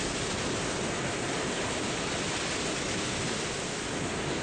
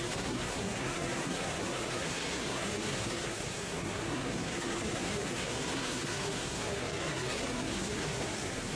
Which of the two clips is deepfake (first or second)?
second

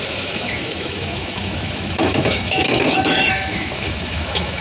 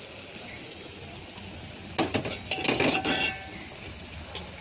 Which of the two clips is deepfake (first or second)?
first